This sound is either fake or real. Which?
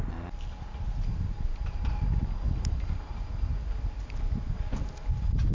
real